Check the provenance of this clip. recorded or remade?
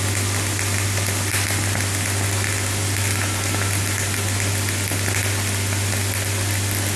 recorded